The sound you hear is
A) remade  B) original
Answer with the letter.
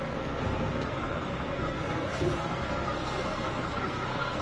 A